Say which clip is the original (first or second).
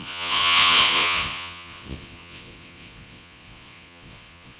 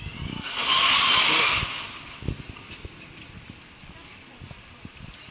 second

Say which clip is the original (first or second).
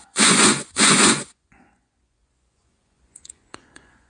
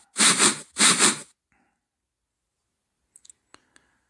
second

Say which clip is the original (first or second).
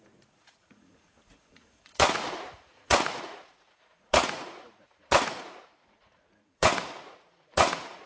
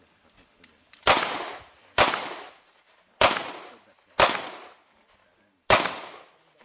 second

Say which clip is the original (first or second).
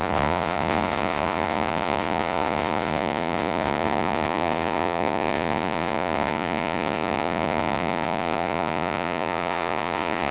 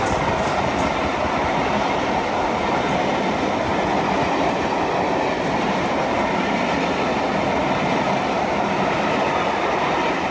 second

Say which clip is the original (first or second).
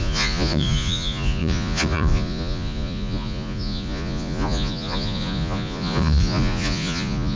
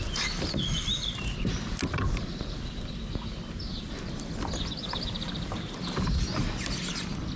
second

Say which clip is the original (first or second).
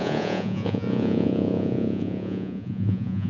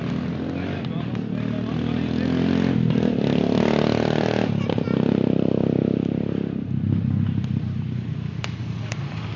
second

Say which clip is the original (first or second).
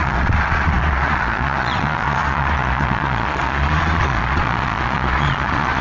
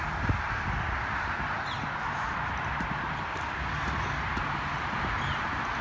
second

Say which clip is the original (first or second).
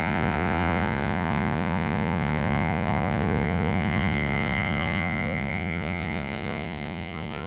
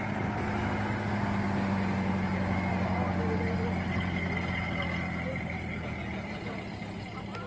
second